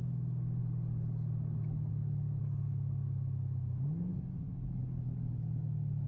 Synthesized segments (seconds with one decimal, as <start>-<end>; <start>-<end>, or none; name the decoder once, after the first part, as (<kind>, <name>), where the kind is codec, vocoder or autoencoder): none